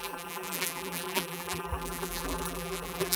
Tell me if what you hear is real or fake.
fake